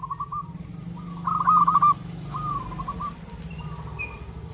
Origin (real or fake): real